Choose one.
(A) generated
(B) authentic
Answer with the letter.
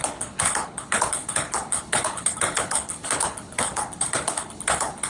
A